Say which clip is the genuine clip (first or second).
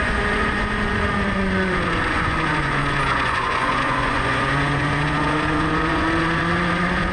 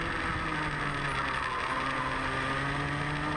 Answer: second